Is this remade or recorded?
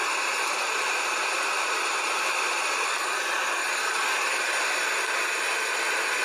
recorded